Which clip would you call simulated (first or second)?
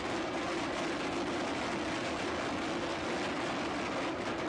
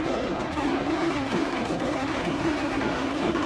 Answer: second